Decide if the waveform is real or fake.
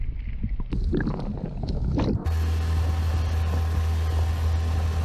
real